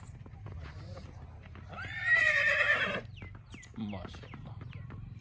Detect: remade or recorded remade